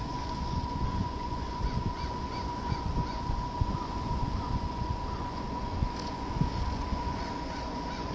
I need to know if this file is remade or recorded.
remade